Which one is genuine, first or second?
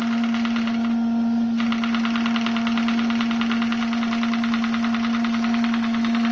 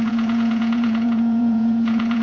first